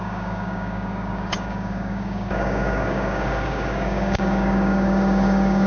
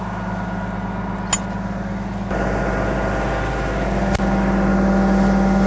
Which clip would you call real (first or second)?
second